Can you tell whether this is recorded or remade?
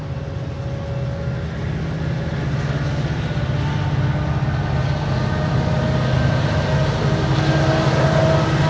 recorded